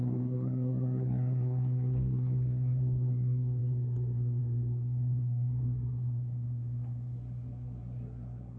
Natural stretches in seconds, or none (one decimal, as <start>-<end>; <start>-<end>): none